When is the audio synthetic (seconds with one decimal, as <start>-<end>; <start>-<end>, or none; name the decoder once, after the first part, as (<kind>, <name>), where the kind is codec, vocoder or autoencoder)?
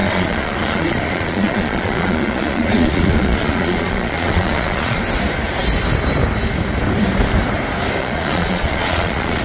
0.0-5.0 (vocoder, Vocos); 8.0-9.4